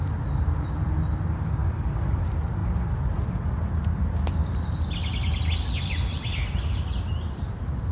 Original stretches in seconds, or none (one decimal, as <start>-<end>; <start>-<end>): 0.0-1.6; 2.2-7.9